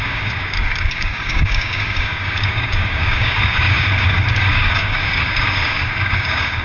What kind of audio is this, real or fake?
fake